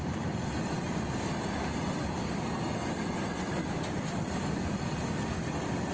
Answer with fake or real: real